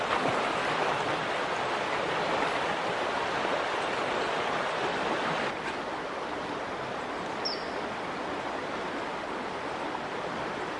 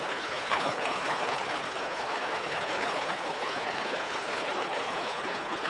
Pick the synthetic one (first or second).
second